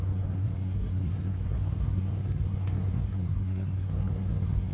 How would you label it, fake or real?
fake